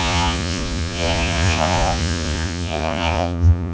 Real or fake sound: fake